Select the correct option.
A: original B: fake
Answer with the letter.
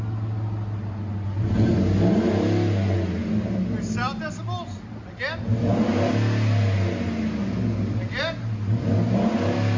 A